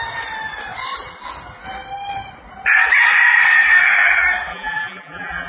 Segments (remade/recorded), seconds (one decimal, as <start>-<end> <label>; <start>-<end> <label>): 0.0-4.5 recorded; 4.5-5.5 remade